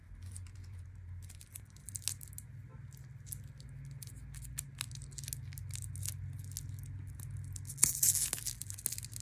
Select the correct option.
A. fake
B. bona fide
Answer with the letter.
B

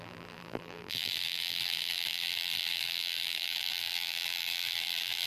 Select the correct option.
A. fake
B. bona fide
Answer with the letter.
A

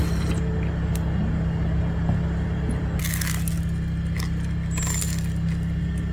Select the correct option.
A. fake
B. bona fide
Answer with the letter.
B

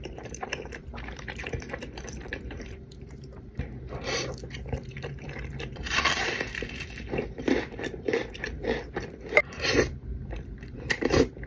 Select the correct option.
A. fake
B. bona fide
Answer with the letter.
A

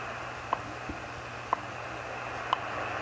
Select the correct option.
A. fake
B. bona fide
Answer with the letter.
B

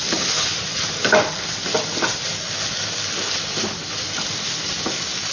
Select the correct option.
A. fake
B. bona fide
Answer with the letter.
B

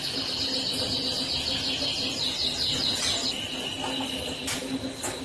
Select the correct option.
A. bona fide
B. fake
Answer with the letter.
A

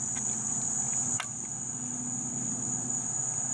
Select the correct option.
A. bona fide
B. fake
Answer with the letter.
A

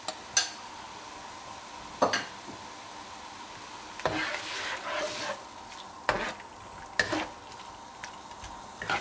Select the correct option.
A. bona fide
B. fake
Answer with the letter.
A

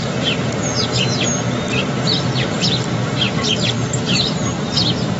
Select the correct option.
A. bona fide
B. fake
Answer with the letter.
B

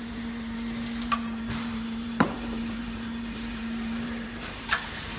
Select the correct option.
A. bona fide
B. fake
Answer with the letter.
B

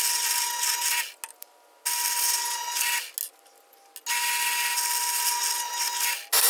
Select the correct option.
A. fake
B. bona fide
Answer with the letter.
B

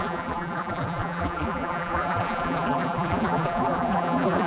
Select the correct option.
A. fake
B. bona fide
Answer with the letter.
A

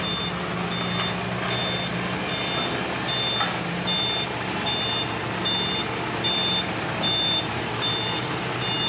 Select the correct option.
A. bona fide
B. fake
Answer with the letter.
A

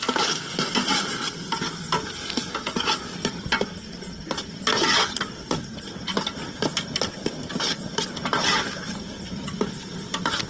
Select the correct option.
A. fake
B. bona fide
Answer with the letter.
B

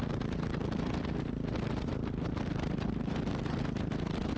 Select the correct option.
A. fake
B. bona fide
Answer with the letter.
B